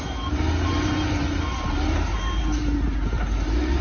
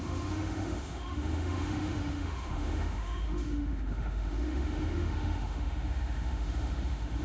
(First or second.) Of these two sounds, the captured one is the first